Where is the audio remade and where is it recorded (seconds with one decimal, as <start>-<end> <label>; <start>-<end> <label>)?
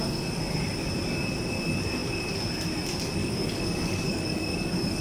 0.0-3.2 recorded; 3.2-5.0 remade